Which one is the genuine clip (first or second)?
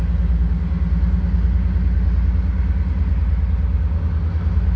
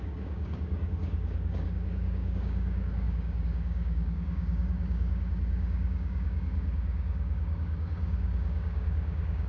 first